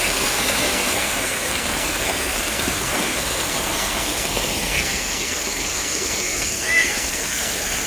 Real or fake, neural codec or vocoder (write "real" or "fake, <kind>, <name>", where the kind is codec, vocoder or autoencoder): fake, codec, SNAC